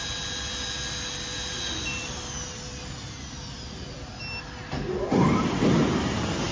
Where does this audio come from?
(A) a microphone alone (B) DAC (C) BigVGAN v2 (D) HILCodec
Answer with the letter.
A